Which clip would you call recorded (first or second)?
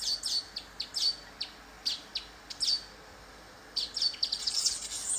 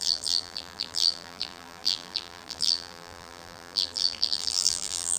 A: first